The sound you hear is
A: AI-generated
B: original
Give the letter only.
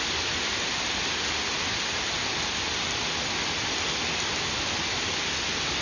B